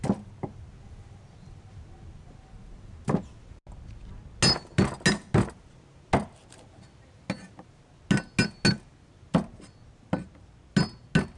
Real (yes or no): yes